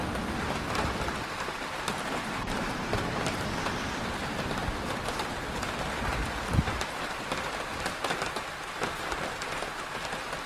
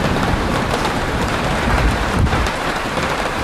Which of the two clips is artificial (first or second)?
second